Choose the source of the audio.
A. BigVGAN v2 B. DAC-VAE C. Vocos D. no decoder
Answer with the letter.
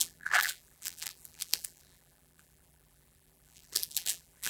A